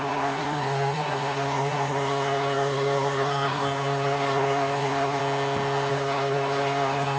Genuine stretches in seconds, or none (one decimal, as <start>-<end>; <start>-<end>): 5.2-5.9